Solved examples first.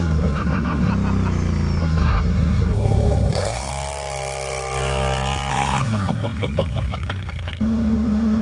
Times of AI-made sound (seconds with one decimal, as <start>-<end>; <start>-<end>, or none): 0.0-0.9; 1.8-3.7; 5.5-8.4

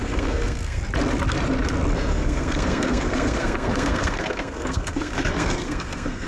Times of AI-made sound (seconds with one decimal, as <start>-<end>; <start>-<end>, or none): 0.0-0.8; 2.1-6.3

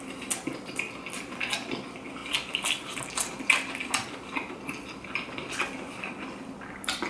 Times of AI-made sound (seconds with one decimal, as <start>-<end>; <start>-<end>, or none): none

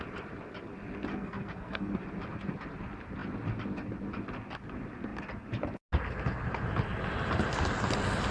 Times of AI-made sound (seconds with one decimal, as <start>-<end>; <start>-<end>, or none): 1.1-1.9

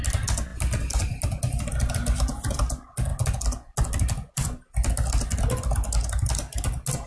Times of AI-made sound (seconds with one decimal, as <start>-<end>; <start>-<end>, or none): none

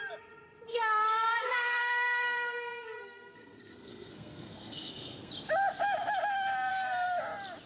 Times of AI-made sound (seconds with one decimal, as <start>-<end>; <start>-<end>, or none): 0.7-5.3; 6.7-7.2